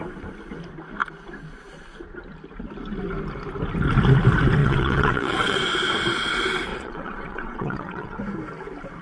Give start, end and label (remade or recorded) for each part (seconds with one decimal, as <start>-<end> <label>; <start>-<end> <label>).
0.0-4.6 recorded; 4.6-5.6 remade; 5.6-6.7 recorded; 6.7-8.2 remade; 8.2-9.0 recorded